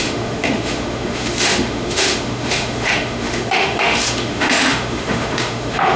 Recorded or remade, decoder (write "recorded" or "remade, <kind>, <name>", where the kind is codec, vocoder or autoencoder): remade, autoencoder, DAC-VAE